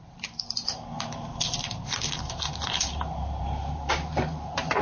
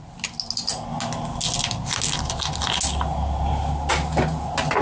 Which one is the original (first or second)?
second